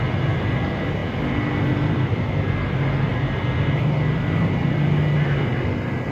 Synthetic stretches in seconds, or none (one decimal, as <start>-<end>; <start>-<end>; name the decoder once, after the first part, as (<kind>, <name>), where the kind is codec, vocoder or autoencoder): 0.0-3.1 (vocoder, BigVGAN v2); 4.7-6.1